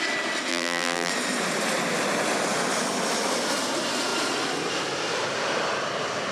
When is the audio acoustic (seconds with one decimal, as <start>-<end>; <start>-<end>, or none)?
0.0-0.5; 1.1-6.3